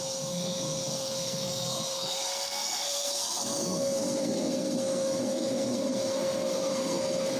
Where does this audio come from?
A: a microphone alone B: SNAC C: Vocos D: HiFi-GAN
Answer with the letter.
B